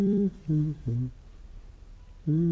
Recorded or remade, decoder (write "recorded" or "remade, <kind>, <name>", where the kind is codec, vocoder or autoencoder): remade, vocoder, BigVGAN v2